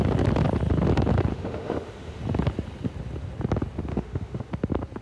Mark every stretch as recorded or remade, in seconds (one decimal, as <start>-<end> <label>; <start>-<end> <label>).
0.0-1.3 recorded; 1.3-2.2 remade; 2.2-3.9 recorded; 3.9-4.5 remade; 4.5-5.0 recorded